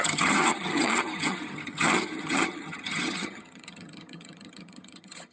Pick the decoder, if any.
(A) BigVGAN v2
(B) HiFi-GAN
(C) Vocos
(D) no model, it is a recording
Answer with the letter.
B